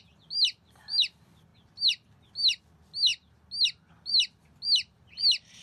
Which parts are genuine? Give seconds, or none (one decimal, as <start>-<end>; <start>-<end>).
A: 0.0-5.6